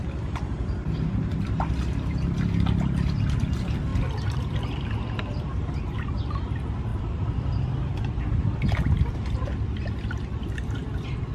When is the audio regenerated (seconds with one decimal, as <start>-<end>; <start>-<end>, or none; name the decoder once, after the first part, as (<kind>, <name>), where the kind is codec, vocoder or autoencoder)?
6.9-8.2 (vocoder, BigVGAN v2)